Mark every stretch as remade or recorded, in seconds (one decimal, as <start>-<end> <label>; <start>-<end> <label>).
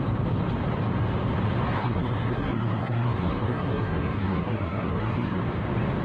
0.0-1.8 recorded; 1.8-5.4 remade; 5.4-6.0 recorded